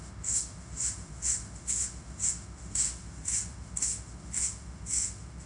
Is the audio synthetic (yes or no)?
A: yes